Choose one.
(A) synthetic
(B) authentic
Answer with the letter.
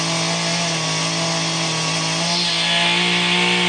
B